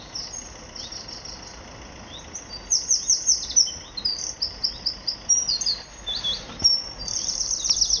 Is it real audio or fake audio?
real